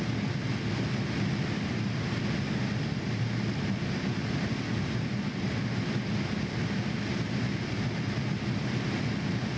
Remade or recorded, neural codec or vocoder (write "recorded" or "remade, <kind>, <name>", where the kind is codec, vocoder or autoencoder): recorded